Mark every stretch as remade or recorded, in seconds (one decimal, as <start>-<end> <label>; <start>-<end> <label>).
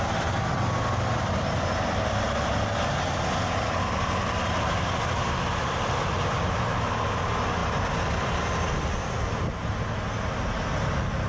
0.0-11.3 recorded